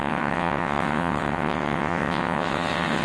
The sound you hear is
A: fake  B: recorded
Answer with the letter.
A